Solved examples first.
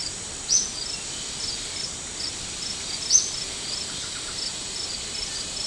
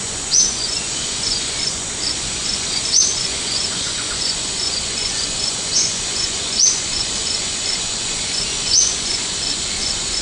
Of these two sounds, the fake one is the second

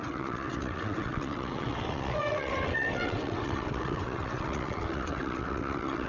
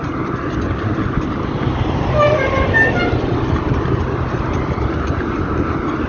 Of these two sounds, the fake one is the first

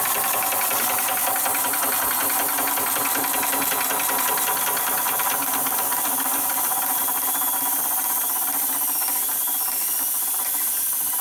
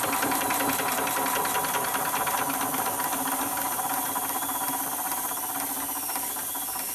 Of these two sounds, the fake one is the second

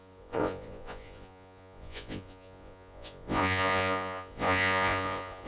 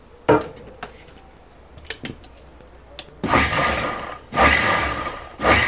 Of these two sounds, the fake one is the first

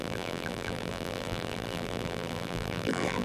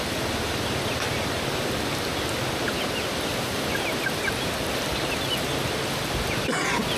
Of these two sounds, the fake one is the first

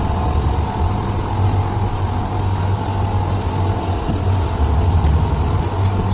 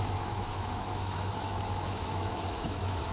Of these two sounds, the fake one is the second